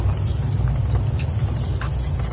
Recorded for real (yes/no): yes